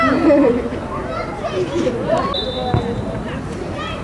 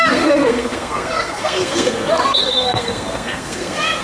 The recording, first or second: first